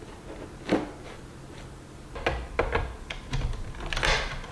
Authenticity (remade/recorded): recorded